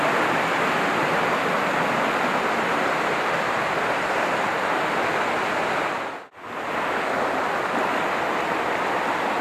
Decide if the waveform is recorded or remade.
recorded